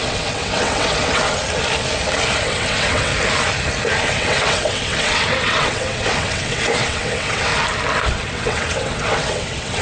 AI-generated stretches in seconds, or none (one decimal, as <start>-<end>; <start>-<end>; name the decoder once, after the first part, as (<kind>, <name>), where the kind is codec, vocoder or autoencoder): 0.0-1.2 (vocoder, WaveNeXt); 2.4-3.1; 4.1-7.5; 8.1-9.8